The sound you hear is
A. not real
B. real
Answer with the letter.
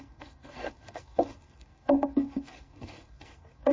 A